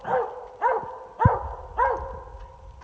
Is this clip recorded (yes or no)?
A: yes